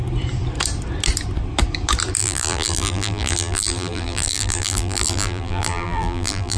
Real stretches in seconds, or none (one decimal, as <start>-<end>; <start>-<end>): 0.0-2.2